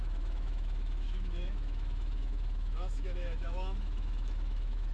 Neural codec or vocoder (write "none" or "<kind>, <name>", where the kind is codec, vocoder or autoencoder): autoencoder, DAC-VAE